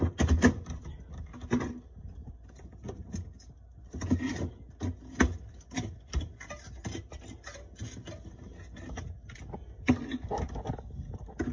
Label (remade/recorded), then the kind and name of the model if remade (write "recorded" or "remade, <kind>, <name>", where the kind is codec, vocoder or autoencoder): recorded